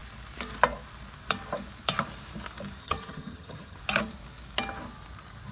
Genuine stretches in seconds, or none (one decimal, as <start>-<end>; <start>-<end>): 0.0-2.8; 3.8-5.5